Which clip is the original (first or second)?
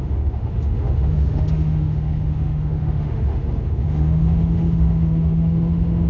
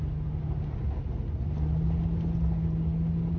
second